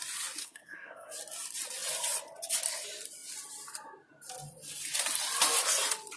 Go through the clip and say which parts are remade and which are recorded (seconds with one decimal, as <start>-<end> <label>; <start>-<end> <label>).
0.0-0.4 recorded; 0.4-1.1 remade; 1.1-6.2 recorded